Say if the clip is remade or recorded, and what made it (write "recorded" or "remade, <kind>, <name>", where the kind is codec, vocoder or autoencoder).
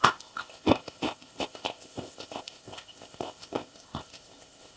remade, codec, ZipCodec